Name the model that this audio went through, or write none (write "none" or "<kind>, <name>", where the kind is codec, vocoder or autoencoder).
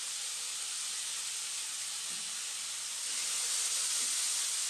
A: none